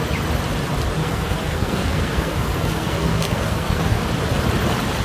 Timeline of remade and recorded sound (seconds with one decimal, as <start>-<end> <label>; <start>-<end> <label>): 0.0-1.0 recorded; 1.0-4.0 remade; 4.0-5.0 recorded